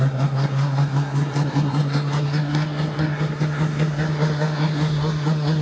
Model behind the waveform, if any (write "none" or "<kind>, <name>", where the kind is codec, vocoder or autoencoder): codec, SNAC